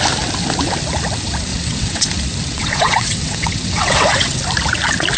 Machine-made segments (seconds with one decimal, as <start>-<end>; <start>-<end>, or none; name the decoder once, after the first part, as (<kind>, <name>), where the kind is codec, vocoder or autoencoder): 1.5-2.1 (vocoder, WaveNeXt); 2.5-4.4